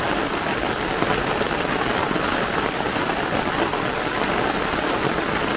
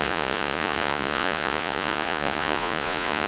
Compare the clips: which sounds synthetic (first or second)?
second